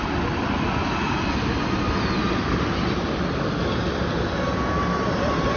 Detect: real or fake real